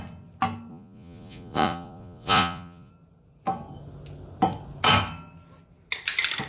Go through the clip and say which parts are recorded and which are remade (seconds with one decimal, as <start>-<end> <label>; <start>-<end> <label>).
0.0-0.7 recorded; 0.7-2.9 remade; 2.9-6.5 recorded